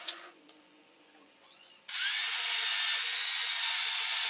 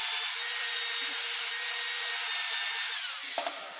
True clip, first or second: second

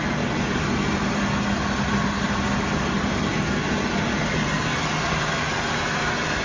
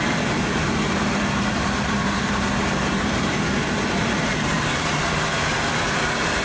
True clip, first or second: first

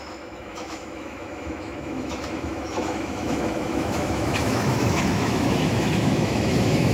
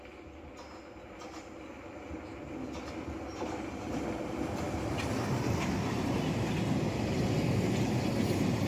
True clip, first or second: second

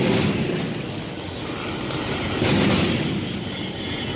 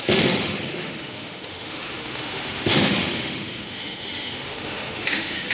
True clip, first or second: first